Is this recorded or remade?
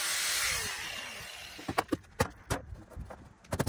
recorded